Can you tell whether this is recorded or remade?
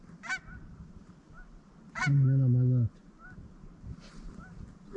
recorded